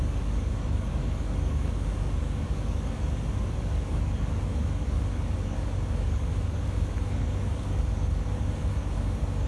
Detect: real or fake fake